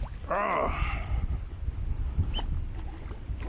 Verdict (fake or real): real